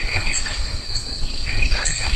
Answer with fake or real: fake